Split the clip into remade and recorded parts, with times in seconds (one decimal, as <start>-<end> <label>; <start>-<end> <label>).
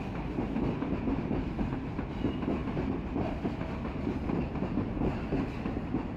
0.0-6.2 recorded